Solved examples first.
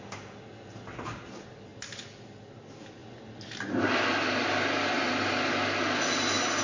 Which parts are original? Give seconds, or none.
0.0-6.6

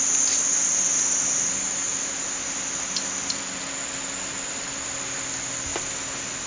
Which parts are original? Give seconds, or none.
0.0-6.5

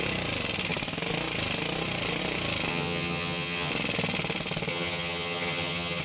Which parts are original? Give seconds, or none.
0.0-2.7; 3.7-4.7

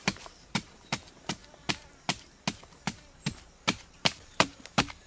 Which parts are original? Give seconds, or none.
1.4-3.9; 4.5-5.1

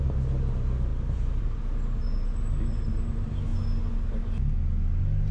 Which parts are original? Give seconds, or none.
0.0-0.9; 1.6-5.3

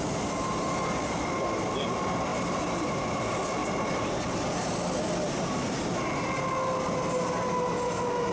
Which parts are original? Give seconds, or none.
0.0-8.3

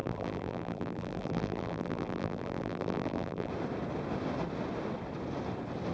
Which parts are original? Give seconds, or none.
3.5-5.9

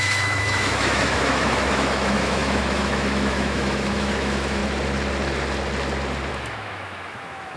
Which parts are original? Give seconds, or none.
4.6-6.3